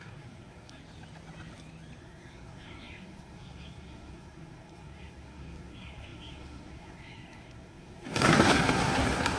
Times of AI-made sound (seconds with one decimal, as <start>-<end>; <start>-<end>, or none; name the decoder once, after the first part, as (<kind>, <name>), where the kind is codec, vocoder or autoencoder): 0.0-0.8 (codec, SNAC); 2.0-9.4